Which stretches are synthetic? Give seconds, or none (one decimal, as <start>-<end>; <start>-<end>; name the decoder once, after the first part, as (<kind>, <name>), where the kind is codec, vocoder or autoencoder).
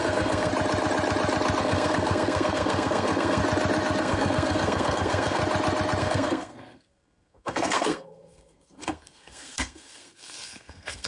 0.0-0.5 (codec, SNAC); 1.6-3.4; 4.0-5.4; 6.0-11.1